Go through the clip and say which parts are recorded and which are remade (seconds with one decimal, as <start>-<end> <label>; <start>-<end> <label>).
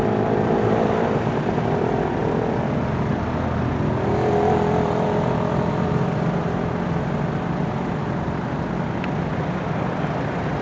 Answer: 0.0-10.6 recorded